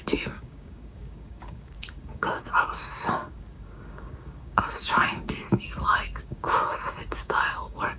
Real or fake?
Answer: fake